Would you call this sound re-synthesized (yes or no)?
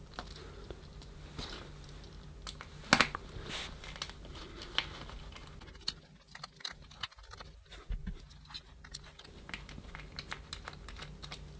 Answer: no